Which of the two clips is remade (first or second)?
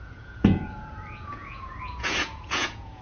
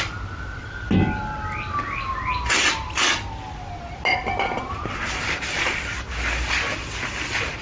first